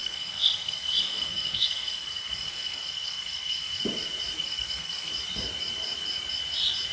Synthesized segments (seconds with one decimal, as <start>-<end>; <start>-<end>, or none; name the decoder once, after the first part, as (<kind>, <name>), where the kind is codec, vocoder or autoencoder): 0.0-3.8 (codec, SNAC); 4.4-5.1